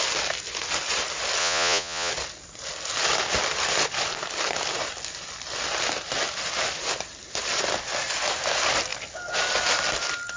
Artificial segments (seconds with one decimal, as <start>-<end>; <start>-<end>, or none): 1.4-2.1